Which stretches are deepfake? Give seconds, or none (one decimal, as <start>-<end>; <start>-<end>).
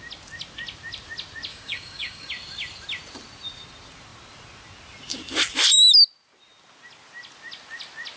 1.5-2.3